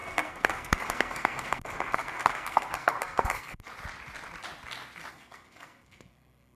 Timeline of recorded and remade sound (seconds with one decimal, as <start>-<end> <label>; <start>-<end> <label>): 0.0-3.7 remade; 3.7-5.1 recorded; 5.1-6.6 remade